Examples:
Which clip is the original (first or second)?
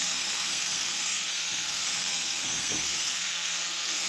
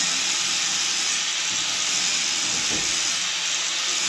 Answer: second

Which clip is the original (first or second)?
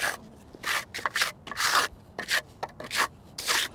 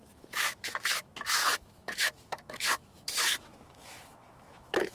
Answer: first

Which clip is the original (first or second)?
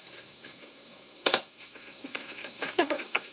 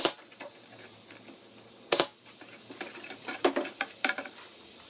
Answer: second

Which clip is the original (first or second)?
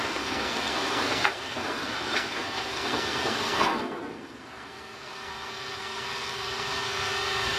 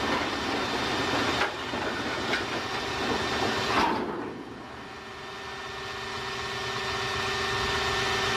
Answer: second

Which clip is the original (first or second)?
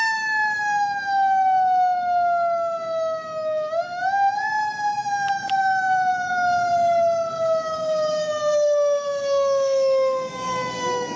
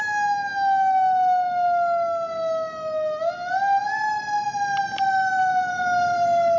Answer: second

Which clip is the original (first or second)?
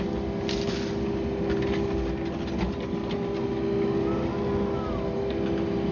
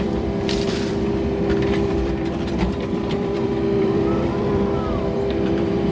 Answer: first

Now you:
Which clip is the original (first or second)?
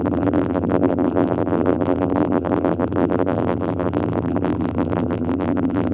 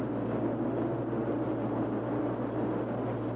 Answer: second